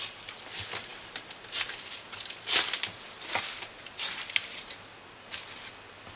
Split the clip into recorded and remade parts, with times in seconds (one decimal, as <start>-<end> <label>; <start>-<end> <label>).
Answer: 0.0-6.2 recorded